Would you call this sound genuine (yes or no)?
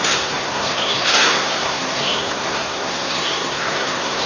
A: no